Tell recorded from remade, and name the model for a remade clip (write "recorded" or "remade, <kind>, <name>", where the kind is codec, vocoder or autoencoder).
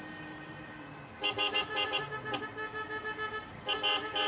recorded